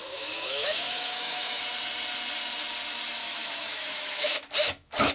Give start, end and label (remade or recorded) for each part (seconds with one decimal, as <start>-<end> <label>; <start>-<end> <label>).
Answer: 0.0-1.6 remade; 1.6-3.2 recorded; 3.2-5.1 remade